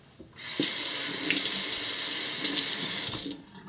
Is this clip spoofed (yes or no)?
no